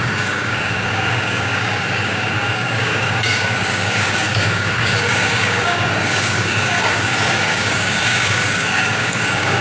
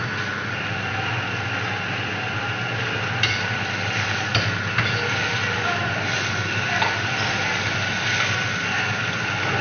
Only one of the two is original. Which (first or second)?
second